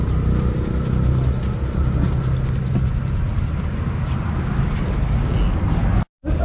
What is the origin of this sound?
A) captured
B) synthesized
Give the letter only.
A